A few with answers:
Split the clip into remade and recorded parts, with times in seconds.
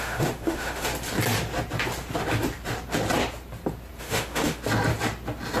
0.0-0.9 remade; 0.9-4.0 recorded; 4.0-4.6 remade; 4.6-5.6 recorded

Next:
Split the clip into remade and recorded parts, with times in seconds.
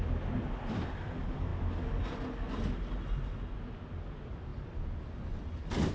0.0-5.9 recorded